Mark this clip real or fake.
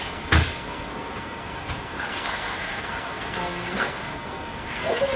fake